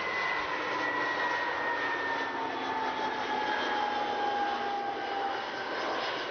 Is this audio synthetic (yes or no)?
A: no